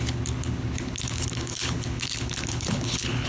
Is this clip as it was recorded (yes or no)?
no